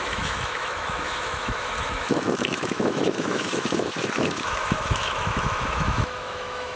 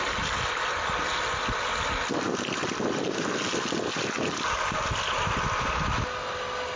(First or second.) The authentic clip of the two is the second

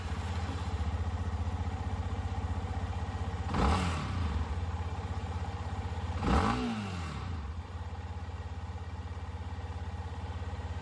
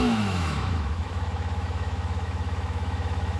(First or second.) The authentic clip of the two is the first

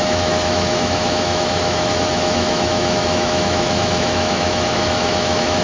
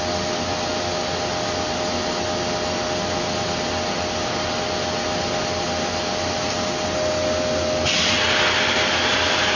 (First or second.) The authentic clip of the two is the second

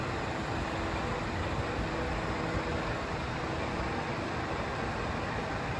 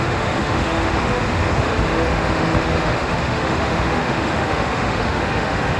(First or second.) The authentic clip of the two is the first